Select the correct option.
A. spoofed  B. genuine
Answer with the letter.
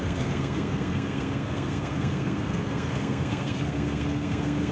A